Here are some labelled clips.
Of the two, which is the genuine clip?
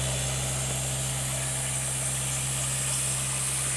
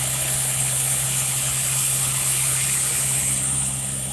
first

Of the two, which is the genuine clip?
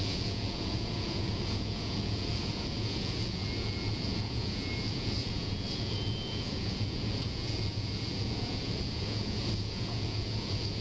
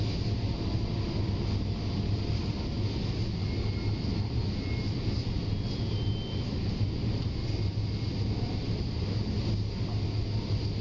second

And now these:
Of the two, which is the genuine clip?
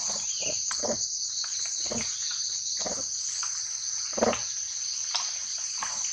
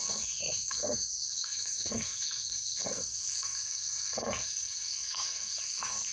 first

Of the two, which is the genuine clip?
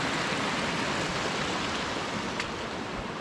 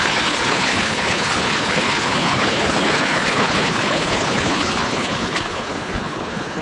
first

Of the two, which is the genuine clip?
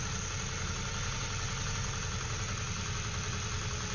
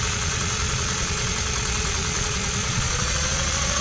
first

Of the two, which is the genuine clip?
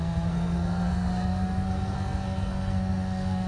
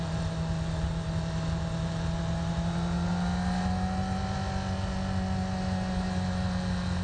second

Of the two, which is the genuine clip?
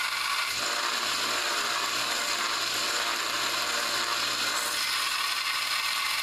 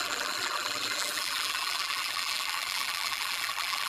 first